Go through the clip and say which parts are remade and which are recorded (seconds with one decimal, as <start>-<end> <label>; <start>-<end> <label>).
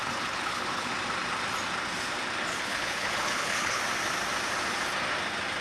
0.0-0.9 remade; 0.9-2.5 recorded; 2.5-3.8 remade; 3.8-5.6 recorded